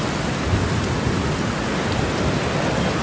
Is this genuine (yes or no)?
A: yes